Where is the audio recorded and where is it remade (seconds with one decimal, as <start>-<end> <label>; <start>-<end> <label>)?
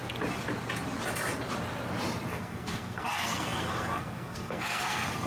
0.0-2.3 recorded; 2.3-5.3 remade